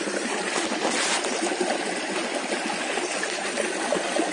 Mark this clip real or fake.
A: real